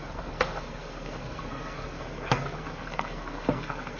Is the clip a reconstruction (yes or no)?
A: yes